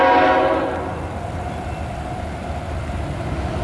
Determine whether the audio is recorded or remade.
recorded